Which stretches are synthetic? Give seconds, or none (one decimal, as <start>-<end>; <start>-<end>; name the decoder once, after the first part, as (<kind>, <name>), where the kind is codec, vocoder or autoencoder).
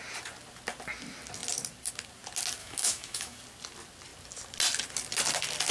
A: 2.6-3.4 (autoencoder, DAC-VAE)